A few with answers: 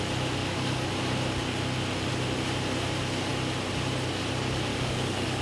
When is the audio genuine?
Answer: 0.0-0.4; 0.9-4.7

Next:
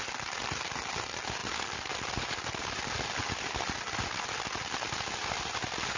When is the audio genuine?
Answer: 0.0-6.0

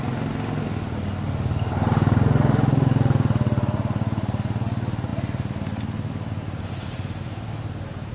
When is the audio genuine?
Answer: 0.0-8.1

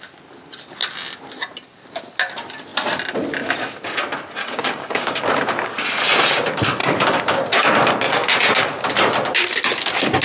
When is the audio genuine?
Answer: 0.0-4.4; 5.2-10.2